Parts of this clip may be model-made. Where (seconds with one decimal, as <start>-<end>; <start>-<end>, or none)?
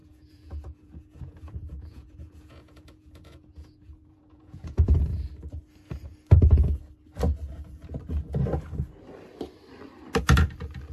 0.0-5.0